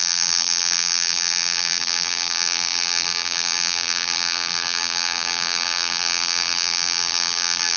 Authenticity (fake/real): fake